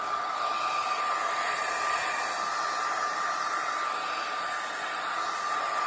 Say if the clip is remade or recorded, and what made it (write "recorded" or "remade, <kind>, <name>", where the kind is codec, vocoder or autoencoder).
recorded